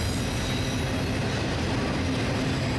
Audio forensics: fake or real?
real